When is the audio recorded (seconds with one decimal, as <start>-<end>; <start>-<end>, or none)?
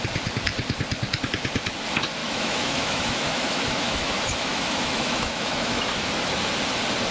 0.0-2.2; 6.5-7.1